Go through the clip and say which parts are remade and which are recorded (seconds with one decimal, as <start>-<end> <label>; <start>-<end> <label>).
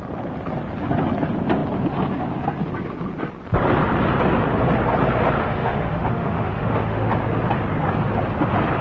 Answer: 0.0-5.4 recorded; 5.4-7.1 remade; 7.1-8.8 recorded